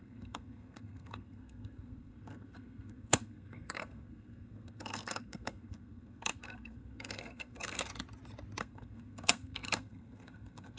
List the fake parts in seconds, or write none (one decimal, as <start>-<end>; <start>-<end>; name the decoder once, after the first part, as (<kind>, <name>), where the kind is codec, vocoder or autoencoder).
0.0-7.9 (codec, SNAC); 8.6-10.8